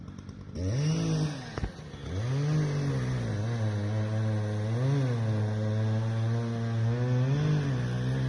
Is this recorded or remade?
recorded